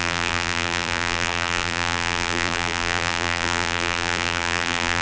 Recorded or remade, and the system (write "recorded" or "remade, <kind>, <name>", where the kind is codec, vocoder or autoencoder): remade, vocoder, BigVGAN v2